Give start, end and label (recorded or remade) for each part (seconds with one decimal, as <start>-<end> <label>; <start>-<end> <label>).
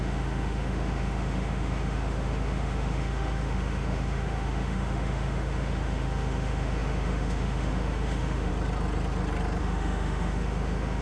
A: 0.0-8.5 remade; 8.5-9.6 recorded; 9.6-11.0 remade